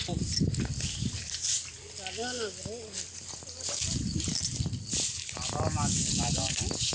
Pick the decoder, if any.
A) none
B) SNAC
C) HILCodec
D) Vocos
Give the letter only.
A